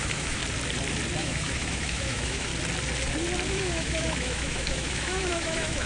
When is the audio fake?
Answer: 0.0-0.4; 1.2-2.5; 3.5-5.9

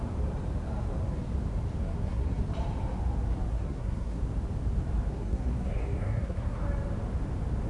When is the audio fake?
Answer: 1.8-2.4; 3.5-4.2; 5.1-6.6